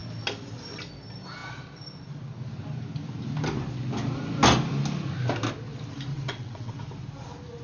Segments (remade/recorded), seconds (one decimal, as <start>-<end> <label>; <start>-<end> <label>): 0.0-6.1 recorded; 6.1-6.8 remade; 6.8-7.6 recorded